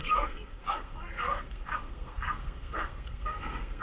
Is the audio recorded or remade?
remade